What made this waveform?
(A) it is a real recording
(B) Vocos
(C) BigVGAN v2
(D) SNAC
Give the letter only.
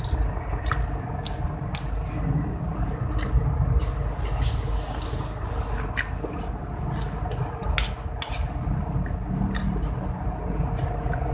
A